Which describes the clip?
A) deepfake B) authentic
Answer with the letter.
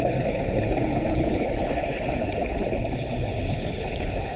A